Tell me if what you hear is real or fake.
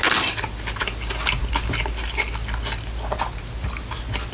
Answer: real